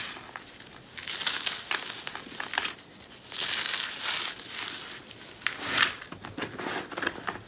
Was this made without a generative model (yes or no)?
yes